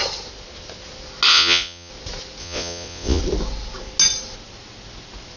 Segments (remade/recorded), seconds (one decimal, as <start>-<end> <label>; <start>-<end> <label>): 0.0-1.3 recorded; 1.3-1.9 remade; 1.9-2.4 recorded; 2.4-3.2 remade; 3.2-5.4 recorded